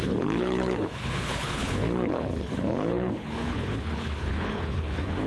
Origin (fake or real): fake